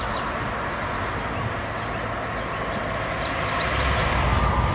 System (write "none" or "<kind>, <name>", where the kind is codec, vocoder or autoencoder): none